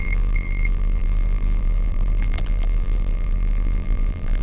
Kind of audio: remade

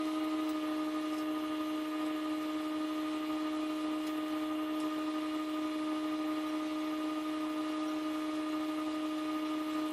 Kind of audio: recorded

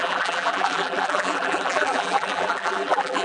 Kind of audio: remade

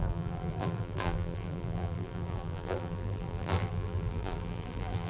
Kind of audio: remade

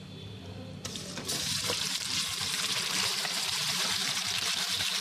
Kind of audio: remade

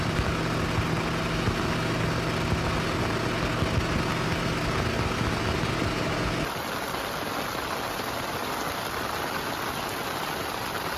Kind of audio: recorded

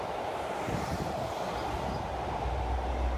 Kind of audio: remade